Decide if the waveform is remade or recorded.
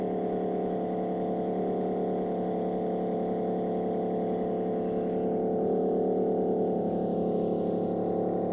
recorded